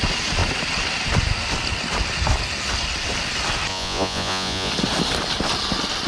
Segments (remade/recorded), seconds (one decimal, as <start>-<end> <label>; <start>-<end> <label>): 0.0-3.7 recorded; 3.7-4.7 remade; 4.7-6.1 recorded